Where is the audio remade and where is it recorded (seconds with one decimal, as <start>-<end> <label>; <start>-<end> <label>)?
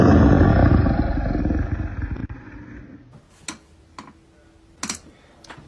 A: 0.0-0.6 recorded; 0.6-1.4 remade; 1.4-5.7 recorded